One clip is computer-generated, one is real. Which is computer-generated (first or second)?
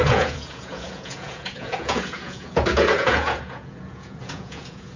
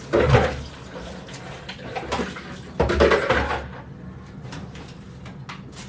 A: first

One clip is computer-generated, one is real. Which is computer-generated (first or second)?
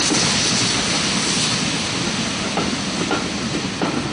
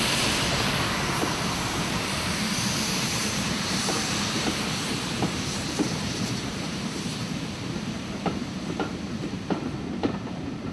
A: second